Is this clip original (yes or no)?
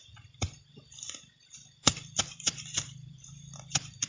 no